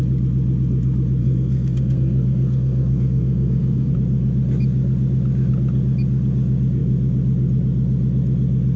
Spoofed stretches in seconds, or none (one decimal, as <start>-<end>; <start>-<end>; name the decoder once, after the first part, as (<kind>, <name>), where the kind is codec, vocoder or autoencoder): 1.2-3.9 (codec, SNAC)